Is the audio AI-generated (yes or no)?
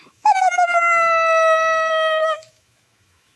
yes